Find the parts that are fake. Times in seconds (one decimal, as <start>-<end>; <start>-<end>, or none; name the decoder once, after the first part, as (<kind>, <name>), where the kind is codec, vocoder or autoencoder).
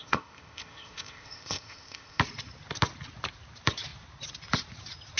0.0-2.2 (codec, ZipCodec)